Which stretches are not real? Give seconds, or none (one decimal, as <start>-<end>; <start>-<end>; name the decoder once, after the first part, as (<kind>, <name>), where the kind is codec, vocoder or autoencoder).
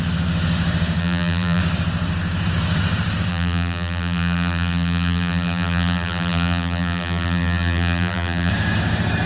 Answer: 1.0-1.6 (vocoder, BigVGAN v2); 3.3-8.5